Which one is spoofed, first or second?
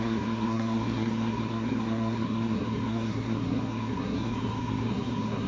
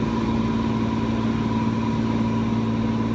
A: first